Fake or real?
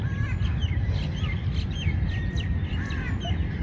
fake